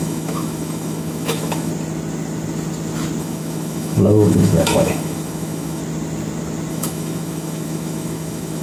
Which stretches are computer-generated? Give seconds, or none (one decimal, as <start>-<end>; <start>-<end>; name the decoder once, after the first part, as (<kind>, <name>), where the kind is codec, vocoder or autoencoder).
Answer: 0.0-1.7 (autoencoder, DAC-VAE); 3.2-5.8; 6.7-8.6